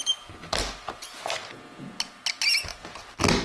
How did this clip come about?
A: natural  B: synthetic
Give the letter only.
A